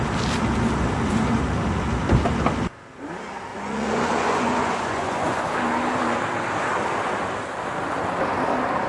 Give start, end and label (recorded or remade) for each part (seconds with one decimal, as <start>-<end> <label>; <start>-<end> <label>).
0.0-3.5 recorded; 3.5-5.4 remade; 5.4-8.9 recorded